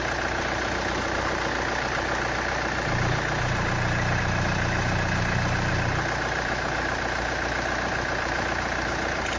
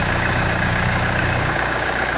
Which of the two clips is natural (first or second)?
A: first